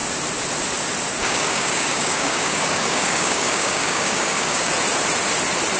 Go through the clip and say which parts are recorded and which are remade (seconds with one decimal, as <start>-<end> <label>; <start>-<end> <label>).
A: 0.0-1.2 recorded; 1.2-4.7 remade; 4.7-5.8 recorded

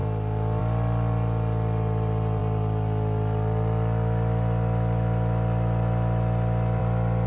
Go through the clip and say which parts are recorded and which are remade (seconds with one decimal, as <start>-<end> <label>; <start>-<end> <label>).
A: 0.0-7.3 recorded